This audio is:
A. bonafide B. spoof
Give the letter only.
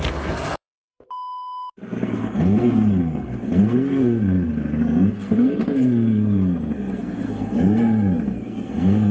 B